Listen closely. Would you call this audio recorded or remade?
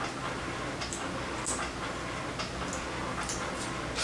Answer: recorded